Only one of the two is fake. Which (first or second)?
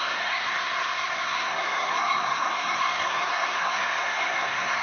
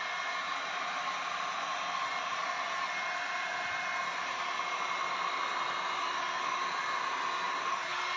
first